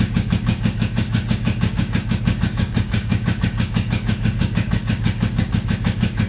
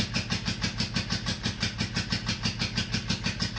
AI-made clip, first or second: first